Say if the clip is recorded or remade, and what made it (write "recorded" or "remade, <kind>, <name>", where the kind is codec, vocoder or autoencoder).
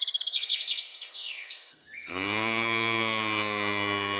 remade, codec, SNAC